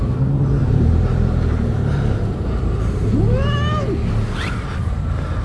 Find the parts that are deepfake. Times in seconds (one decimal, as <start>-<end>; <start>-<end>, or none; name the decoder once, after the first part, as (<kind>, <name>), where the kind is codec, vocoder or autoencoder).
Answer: 0.6-3.2 (vocoder, BigVGAN v2)